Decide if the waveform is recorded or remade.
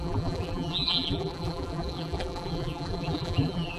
remade